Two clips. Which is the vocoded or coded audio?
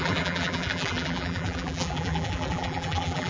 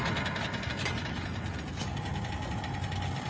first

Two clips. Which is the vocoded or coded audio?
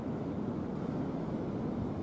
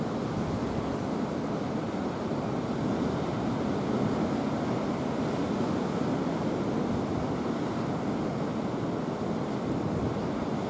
first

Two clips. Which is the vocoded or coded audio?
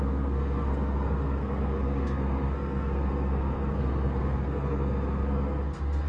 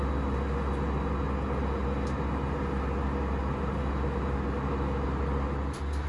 first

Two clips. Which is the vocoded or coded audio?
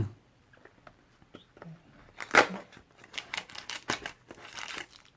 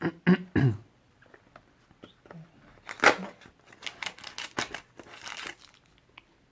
first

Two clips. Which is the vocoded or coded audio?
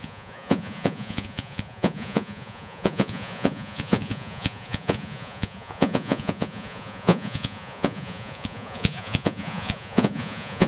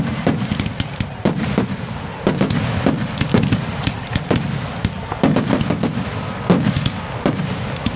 first